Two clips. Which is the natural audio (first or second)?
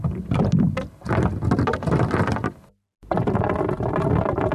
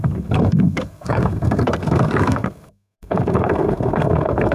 first